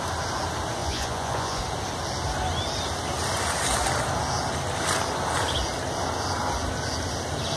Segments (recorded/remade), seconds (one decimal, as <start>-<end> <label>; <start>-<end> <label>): 0.0-0.8 recorded; 0.8-1.6 remade; 1.6-7.6 recorded